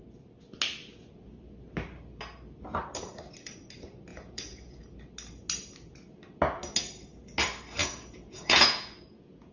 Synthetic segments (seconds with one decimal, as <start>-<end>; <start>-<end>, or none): 4.1-4.8; 7.8-9.5